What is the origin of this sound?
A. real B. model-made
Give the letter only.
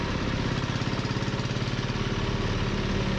A